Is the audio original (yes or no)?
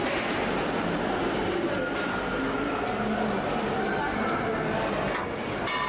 yes